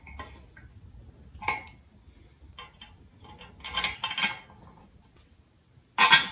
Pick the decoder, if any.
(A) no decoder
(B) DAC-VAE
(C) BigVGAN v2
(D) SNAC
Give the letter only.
A